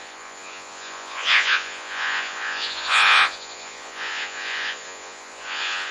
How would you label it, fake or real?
fake